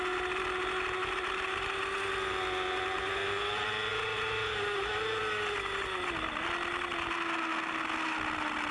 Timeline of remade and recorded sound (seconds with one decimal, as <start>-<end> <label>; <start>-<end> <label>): 0.0-8.7 recorded